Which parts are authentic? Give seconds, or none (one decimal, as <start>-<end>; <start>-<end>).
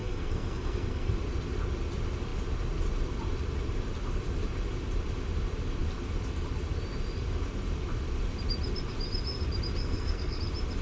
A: 1.1-9.8; 10.4-10.8